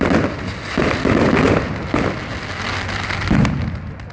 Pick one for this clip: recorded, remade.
recorded